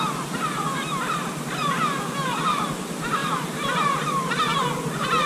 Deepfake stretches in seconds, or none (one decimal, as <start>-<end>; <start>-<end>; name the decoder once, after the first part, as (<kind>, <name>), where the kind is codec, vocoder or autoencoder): 3.2-4.7 (vocoder, BigVGAN v2)